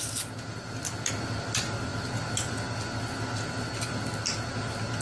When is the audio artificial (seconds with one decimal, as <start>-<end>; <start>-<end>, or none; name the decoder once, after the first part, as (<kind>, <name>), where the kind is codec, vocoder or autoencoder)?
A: none